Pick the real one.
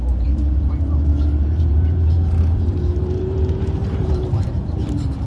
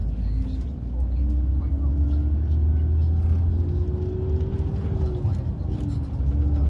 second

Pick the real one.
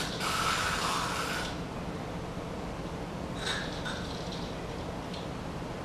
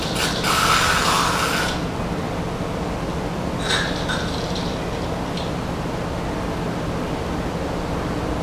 second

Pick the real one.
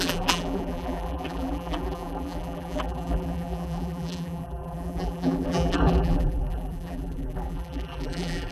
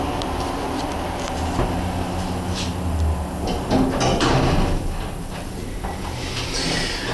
second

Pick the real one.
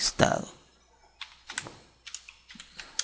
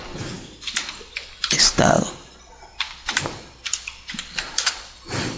first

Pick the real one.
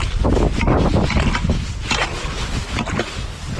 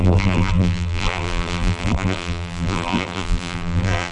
first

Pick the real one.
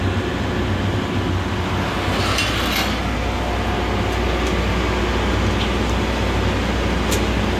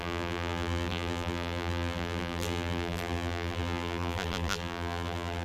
first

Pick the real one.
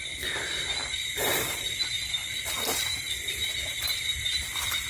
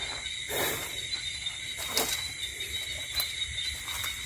second